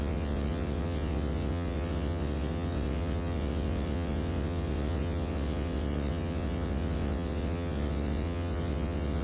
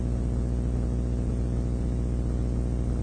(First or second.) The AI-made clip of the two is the first